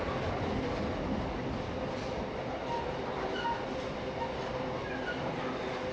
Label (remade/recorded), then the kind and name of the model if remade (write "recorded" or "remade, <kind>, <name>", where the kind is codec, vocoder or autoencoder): recorded